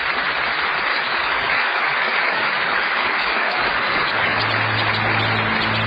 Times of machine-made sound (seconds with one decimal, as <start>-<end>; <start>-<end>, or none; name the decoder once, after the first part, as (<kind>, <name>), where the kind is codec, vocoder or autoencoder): 0.9-4.4 (codec, DAC)